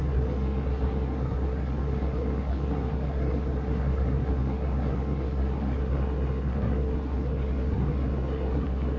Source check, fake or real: fake